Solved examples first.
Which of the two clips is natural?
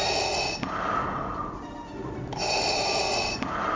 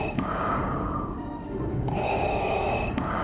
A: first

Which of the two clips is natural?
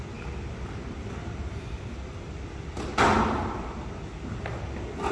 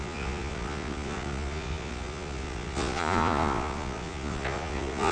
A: first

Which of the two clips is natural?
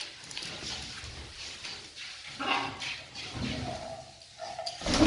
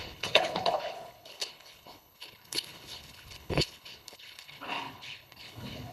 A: first